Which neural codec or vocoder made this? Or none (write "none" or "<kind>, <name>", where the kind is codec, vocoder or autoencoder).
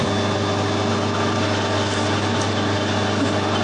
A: none